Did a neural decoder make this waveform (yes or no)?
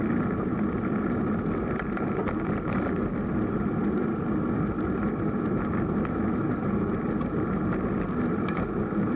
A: no